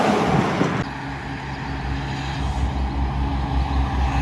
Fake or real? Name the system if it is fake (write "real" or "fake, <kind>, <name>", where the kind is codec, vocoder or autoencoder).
real